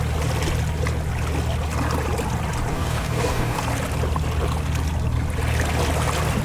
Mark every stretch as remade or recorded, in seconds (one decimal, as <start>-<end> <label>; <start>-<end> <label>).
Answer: 0.0-2.7 recorded; 2.7-3.6 remade; 3.6-6.4 recorded